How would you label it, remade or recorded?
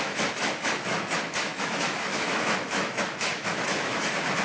remade